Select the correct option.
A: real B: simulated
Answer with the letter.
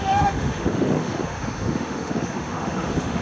B